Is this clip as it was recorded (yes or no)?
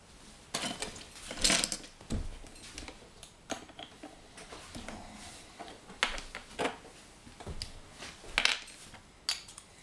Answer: yes